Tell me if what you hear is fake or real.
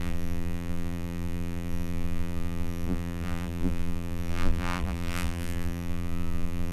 fake